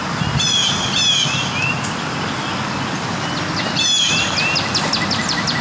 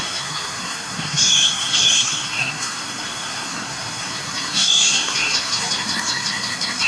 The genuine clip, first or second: first